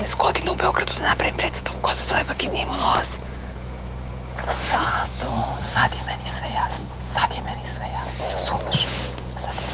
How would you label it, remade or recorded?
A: remade